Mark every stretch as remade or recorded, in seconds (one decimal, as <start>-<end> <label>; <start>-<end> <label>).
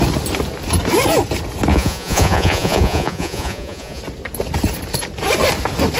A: 0.0-1.7 recorded; 1.7-4.0 remade; 4.0-6.0 recorded